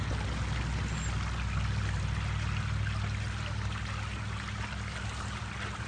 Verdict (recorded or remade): recorded